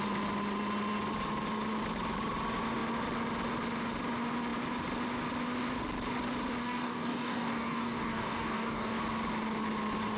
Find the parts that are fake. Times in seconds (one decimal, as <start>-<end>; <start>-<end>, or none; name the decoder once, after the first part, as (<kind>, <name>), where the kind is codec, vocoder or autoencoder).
6.6-9.0 (codec, DAC)